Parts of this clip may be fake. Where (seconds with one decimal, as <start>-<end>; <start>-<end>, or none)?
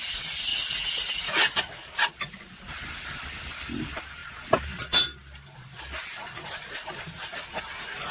0.5-1.5